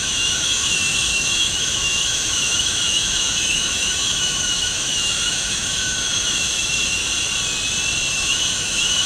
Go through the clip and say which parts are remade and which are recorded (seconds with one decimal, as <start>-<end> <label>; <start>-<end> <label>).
0.0-7.0 remade; 7.0-8.1 recorded; 8.1-9.1 remade